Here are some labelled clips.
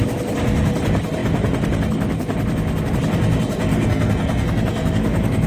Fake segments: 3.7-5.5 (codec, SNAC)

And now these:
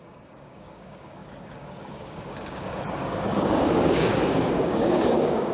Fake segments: 0.0-5.5 (codec, DAC)

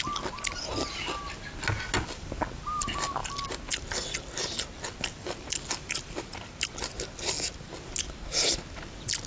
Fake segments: none

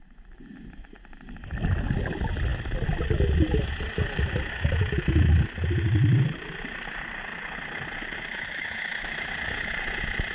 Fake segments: none